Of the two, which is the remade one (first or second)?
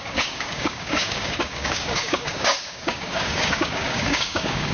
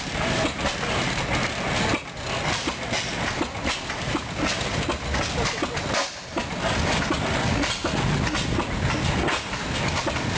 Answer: first